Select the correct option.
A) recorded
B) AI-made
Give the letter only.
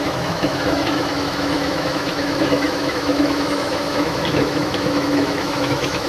B